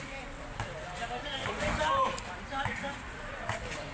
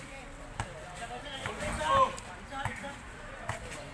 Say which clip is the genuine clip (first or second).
second